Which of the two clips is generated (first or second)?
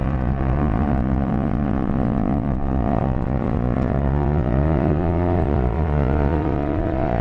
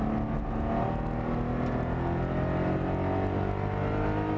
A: first